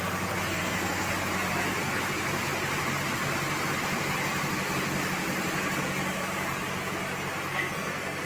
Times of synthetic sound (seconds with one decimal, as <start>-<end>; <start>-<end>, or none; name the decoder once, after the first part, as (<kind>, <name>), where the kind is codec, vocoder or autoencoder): 0.5-1.1 (codec, SNAC); 7.5-8.3